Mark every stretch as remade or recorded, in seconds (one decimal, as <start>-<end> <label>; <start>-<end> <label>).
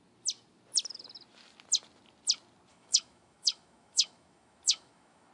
0.0-2.7 recorded; 2.7-5.3 remade